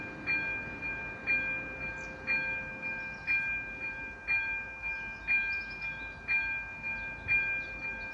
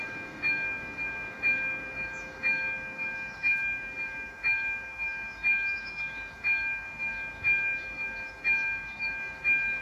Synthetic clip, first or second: second